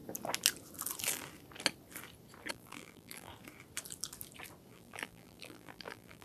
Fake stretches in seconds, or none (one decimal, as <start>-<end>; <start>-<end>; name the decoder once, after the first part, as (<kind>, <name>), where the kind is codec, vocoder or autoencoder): 2.5-3.3 (vocoder, BigVGAN v2); 4.7-6.2